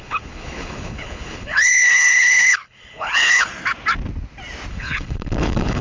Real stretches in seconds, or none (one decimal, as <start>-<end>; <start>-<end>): 3.5-4.7